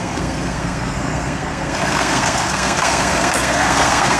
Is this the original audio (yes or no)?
no